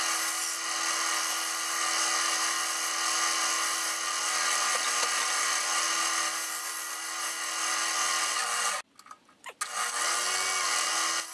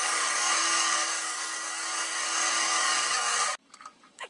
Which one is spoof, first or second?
second